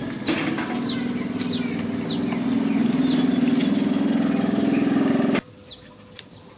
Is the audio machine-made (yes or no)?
no